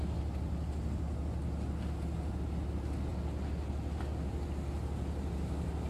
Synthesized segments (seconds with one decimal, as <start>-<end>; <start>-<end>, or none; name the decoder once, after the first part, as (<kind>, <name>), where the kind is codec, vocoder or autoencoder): none

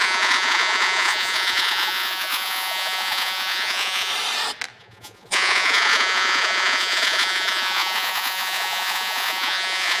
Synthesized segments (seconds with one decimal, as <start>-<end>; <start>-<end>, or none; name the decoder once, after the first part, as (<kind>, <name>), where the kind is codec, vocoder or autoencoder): 0.0-4.1 (vocoder, Vocos); 4.8-10.0

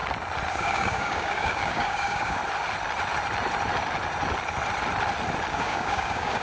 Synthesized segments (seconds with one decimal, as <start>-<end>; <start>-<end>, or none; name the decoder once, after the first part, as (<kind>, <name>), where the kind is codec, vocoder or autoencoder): 0.5-2.4 (codec, DAC); 5.5-6.4

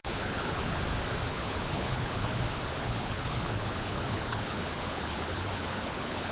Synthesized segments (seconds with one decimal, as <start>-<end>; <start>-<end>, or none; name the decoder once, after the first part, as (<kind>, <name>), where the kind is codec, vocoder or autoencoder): 0.0-0.8 (codec, HILCodec); 1.3-2.4; 2.8-6.3

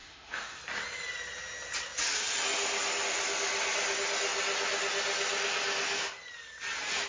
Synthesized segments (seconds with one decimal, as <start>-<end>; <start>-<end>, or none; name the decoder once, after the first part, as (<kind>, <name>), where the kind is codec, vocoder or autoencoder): 0.0-0.6 (autoencoder, DAC-VAE)